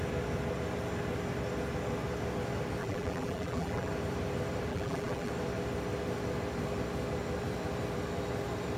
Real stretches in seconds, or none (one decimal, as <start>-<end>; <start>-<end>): 0.0-2.8; 3.9-4.7; 5.3-8.8